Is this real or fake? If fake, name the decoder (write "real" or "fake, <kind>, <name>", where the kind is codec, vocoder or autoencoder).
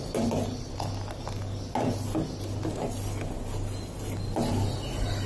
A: real